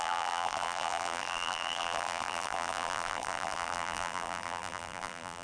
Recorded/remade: remade